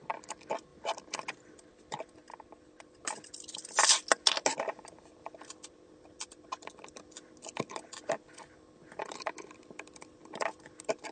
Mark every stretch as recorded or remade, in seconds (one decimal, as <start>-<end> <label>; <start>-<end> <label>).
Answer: 0.0-11.1 recorded